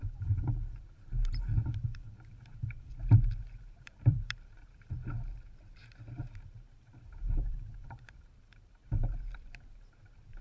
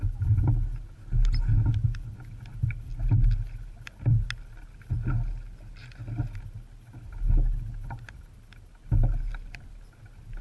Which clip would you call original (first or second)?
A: second